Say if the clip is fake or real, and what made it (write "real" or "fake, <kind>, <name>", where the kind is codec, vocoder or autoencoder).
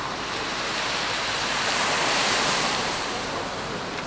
fake, vocoder, BigVGAN v2